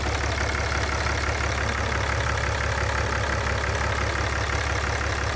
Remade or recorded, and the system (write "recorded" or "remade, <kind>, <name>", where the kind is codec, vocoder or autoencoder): recorded